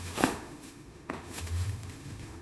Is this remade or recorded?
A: remade